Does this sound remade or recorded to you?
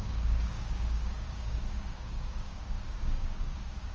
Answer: remade